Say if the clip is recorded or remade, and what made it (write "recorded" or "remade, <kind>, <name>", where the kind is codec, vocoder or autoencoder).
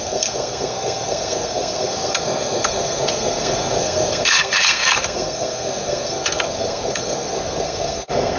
remade, codec, SNAC